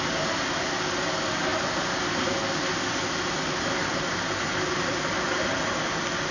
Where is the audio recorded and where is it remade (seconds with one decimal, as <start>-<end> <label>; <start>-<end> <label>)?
0.0-6.3 recorded